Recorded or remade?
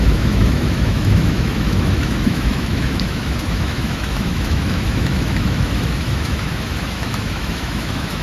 remade